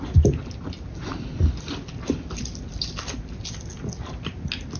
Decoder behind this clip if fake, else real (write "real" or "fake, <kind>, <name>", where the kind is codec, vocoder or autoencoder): real